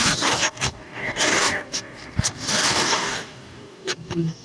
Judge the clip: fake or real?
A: fake